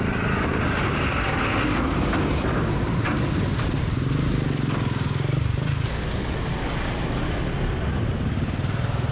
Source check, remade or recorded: recorded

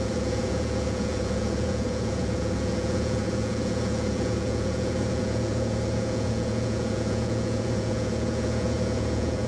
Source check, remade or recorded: remade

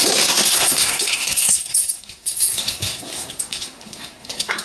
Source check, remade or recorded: remade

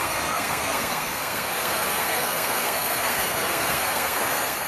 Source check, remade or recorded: remade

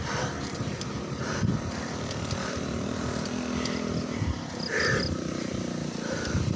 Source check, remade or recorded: remade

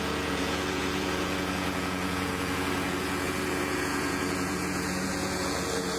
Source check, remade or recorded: remade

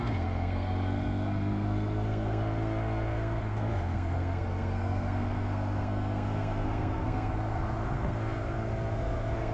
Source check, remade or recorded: remade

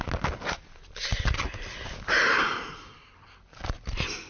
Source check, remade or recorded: recorded